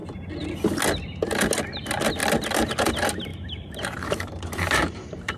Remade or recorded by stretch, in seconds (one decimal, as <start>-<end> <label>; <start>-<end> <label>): 0.0-3.3 recorded; 3.3-5.4 remade

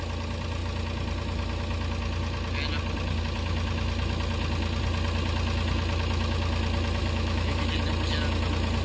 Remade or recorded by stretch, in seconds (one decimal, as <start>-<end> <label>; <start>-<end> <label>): 0.0-7.0 recorded; 7.0-7.6 remade; 7.6-8.8 recorded

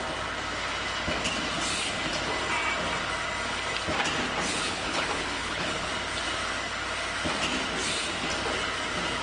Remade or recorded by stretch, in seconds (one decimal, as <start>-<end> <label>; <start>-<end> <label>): 0.0-4.5 recorded; 4.5-5.9 remade; 5.9-9.2 recorded

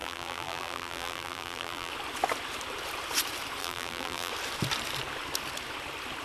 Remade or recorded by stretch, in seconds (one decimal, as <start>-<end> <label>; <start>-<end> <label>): 0.0-1.9 remade; 1.9-3.6 recorded; 3.6-4.3 remade; 4.3-6.2 recorded

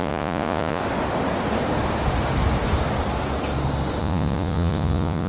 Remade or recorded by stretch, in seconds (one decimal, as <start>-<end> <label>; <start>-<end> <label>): 0.0-0.8 remade; 0.8-4.0 recorded; 4.0-5.3 remade